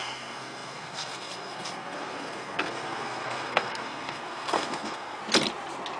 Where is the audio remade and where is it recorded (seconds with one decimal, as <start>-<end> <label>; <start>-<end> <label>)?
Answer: 0.0-5.2 remade; 5.2-6.0 recorded